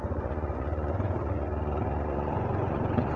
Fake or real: fake